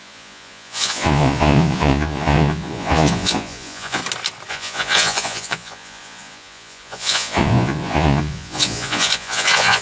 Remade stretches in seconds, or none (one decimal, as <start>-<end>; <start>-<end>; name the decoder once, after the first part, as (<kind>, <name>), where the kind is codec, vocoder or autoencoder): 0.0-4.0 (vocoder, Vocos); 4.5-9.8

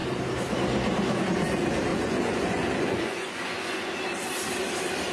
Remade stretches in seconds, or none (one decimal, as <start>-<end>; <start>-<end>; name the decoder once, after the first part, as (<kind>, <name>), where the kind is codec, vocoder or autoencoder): 1.9-3.9 (vocoder, Vocos)

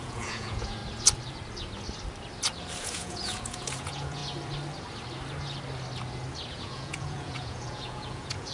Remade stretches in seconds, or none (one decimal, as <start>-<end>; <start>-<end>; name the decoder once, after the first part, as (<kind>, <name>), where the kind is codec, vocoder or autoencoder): 0.0-0.8 (vocoder, Vocos); 2.8-4.2; 6.5-8.5